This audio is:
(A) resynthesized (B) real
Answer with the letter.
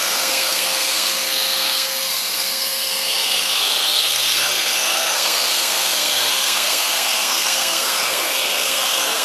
A